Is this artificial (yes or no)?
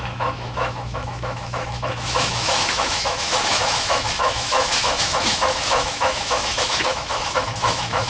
yes